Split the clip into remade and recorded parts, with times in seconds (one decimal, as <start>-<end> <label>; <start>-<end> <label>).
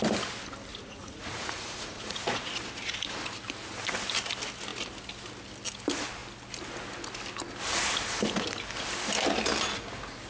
0.0-0.7 recorded; 0.7-2.5 remade; 2.5-10.3 recorded